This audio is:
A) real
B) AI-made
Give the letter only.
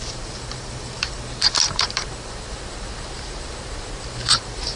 B